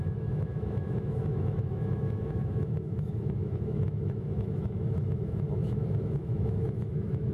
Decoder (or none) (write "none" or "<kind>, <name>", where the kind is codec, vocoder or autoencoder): autoencoder, DAC-VAE